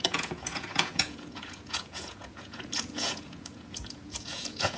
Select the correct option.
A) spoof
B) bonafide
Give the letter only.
A